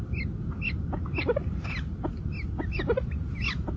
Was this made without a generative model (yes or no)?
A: yes